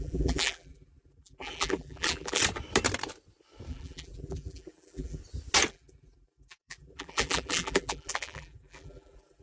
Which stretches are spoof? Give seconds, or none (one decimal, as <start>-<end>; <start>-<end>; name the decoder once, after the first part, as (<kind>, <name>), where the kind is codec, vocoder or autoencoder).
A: 0.0-2.4 (vocoder, BigVGAN v2); 3.7-5.2; 5.7-9.4